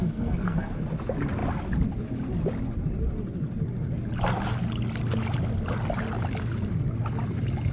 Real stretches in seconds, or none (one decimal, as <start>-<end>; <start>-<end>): 0.8-7.7